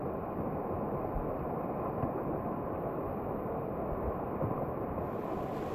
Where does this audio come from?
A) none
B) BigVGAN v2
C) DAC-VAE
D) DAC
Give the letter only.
A